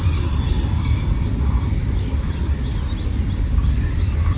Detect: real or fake real